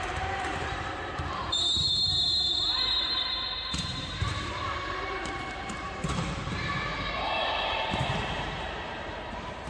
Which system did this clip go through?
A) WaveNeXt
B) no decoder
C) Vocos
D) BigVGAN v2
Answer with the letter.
D